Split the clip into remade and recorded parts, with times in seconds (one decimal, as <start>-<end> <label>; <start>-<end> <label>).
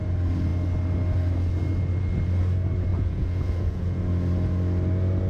0.0-2.9 recorded; 2.9-4.0 remade; 4.0-5.3 recorded